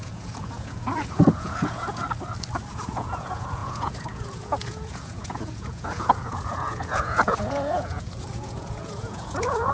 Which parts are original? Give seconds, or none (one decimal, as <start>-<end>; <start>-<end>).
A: 2.0-2.7